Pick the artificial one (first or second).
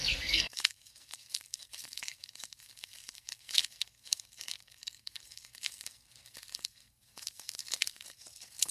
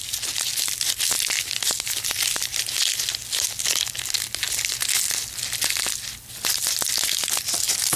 first